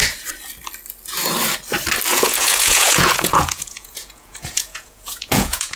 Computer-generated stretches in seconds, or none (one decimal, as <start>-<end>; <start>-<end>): 2.1-5.8